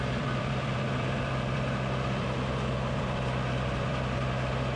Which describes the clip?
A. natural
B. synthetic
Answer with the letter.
B